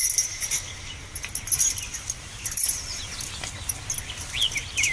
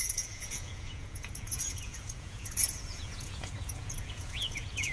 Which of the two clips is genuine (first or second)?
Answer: first